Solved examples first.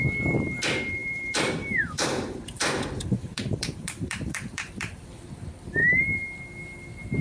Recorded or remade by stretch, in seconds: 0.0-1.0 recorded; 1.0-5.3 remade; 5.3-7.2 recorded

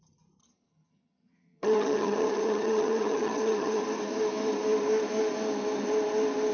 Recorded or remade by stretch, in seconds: 0.0-0.4 recorded; 0.4-3.8 remade; 3.8-6.5 recorded

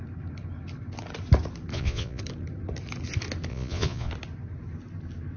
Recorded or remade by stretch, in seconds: 0.0-1.7 recorded; 1.7-2.2 remade; 2.2-3.5 recorded; 3.5-4.1 remade; 4.1-5.4 recorded

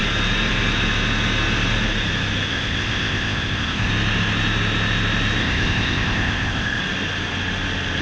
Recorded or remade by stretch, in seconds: 0.0-2.5 recorded; 2.5-3.9 remade; 3.9-5.4 recorded; 5.4-6.8 remade; 6.8-8.0 recorded

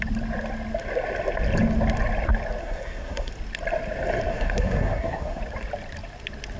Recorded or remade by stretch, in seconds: 0.0-2.6 recorded; 2.6-3.3 remade; 3.3-4.3 recorded; 4.3-5.4 remade; 5.4-6.6 recorded

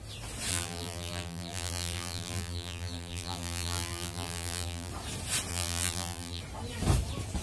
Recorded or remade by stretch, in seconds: 0.0-0.5 recorded; 0.5-4.9 remade; 4.9-5.5 recorded; 5.5-6.4 remade; 6.4-7.4 recorded

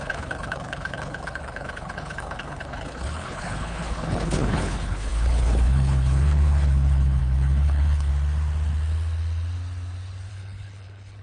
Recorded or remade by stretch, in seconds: 0.0-8.1 remade; 8.1-10.3 recorded; 10.3-11.2 remade